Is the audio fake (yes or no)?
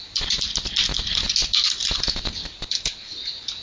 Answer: no